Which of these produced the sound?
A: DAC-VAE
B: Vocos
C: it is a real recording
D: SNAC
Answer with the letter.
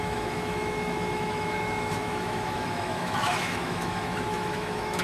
A